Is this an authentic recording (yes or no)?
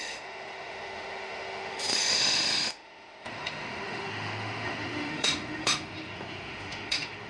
no